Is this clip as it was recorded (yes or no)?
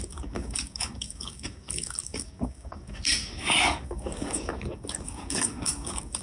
no